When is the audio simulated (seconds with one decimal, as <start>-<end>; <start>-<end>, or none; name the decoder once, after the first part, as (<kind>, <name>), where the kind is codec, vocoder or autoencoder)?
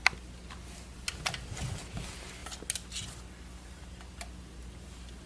none